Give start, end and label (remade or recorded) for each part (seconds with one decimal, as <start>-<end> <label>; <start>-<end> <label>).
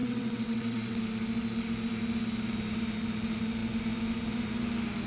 0.0-1.0 remade; 1.0-5.1 recorded